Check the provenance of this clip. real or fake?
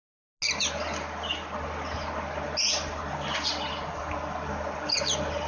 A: real